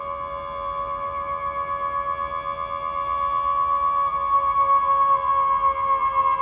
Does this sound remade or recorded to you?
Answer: recorded